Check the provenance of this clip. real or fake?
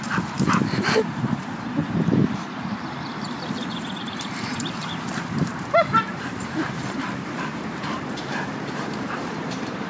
fake